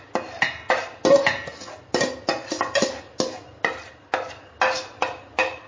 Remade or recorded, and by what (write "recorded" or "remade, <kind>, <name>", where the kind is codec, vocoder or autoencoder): recorded